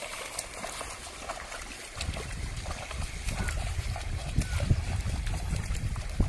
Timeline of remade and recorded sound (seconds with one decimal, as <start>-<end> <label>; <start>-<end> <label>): 0.0-6.3 recorded